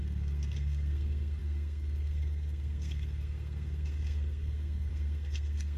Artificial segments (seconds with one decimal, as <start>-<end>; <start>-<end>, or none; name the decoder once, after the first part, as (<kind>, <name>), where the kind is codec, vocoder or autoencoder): 0.0-5.8 (codec, SNAC)